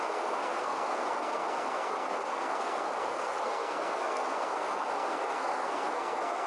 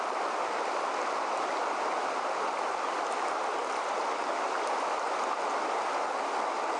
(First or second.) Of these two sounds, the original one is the second